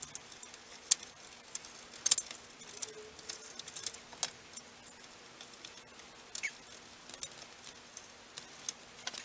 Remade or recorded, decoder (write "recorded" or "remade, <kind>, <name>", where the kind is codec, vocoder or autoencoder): recorded